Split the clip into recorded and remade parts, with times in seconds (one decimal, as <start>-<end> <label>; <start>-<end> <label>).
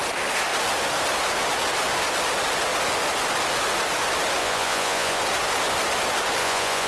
0.0-4.4 recorded; 4.4-5.2 remade; 5.2-6.4 recorded; 6.4-6.9 remade